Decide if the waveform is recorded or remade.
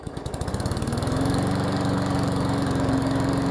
remade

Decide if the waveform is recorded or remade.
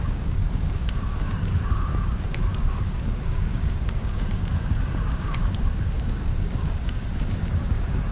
remade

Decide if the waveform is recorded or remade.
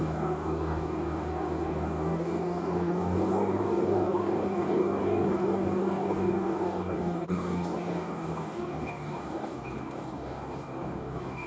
remade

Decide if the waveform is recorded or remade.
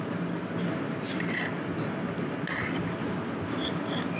recorded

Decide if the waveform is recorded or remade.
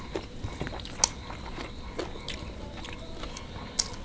recorded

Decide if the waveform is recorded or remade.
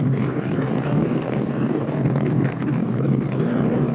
remade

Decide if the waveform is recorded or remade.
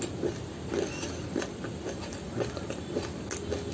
recorded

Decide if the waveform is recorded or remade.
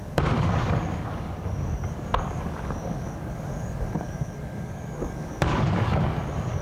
remade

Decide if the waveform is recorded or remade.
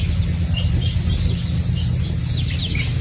recorded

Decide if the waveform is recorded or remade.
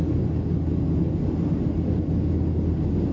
recorded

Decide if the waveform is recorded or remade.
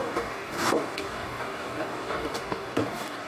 remade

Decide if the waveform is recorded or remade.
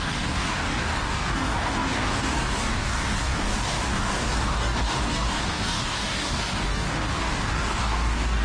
remade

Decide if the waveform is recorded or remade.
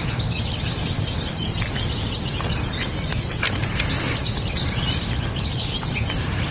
recorded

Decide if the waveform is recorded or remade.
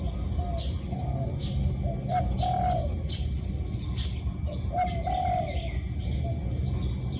recorded